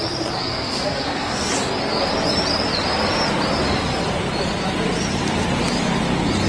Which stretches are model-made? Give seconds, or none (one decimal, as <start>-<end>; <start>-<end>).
0.4-1.5